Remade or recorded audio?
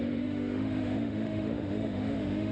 remade